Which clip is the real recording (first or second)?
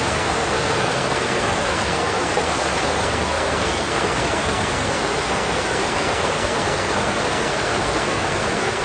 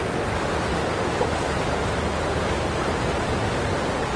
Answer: second